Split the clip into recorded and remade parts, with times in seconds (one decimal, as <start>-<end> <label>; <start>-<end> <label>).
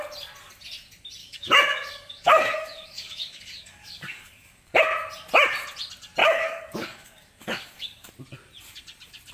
0.0-1.2 recorded; 1.2-4.8 remade; 4.8-6.2 recorded; 6.2-8.1 remade; 8.1-9.3 recorded